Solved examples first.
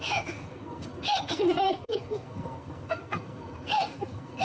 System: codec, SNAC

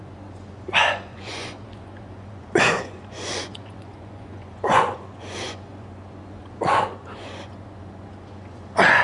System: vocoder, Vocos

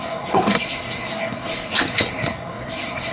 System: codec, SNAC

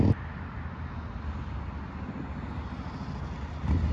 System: none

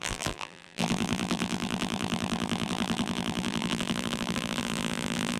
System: vocoder, BigVGAN v2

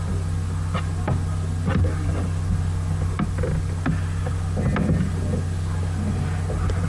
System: none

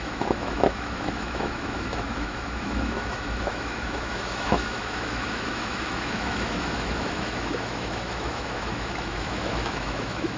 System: autoencoder, DAC-VAE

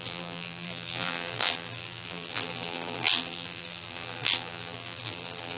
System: vocoder, BigVGAN v2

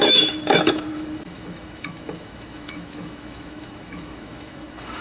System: autoencoder, DAC-VAE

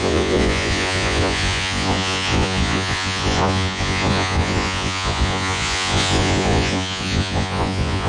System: vocoder, Vocos